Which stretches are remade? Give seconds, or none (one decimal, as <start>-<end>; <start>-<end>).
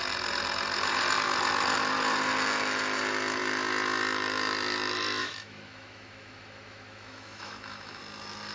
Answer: 5.2-8.0